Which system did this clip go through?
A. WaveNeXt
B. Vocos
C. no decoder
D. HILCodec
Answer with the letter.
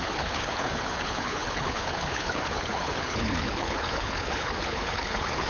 D